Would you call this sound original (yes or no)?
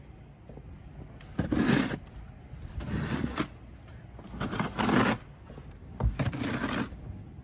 yes